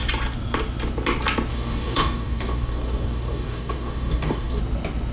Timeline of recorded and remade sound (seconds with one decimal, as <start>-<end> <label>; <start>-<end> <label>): 0.0-1.5 recorded; 1.5-4.6 remade; 4.6-5.1 recorded